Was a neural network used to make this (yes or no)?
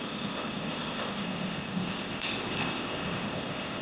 yes